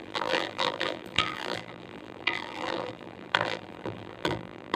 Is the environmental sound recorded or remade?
remade